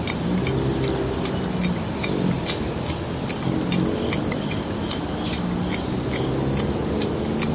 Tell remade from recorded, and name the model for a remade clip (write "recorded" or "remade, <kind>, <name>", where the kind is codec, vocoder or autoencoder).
recorded